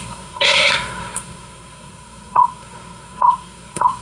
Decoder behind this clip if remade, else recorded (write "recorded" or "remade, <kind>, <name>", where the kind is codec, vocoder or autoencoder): remade, codec, SNAC